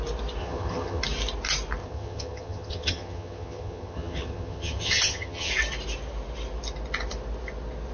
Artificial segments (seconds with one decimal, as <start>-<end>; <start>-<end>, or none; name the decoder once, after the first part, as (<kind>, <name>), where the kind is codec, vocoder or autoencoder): 0.4-1.0 (vocoder, HiFi-GAN); 1.8-5.5